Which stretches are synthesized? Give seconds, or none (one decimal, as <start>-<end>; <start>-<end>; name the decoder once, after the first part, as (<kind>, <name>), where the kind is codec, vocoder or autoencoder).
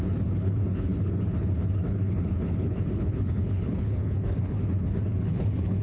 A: 0.0-5.8 (codec, HILCodec)